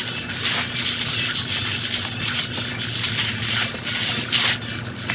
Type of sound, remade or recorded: recorded